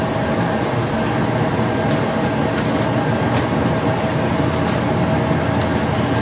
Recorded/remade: recorded